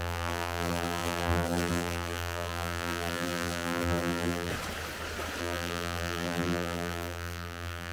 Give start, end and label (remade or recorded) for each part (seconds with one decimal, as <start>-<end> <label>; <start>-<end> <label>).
0.0-4.5 remade; 4.5-5.4 recorded; 5.4-7.9 remade